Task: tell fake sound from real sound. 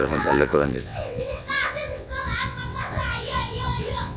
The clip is fake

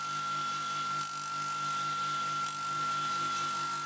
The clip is real